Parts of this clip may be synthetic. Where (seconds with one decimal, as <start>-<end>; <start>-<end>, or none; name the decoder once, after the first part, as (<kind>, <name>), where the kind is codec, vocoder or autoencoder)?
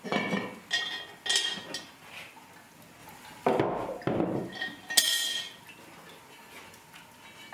none